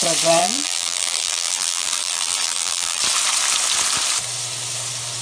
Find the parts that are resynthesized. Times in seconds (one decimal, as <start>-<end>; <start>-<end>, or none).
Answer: 0.4-3.0